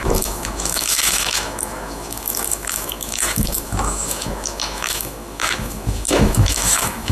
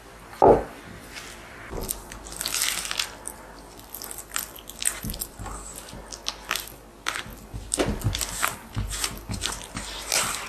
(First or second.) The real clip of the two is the second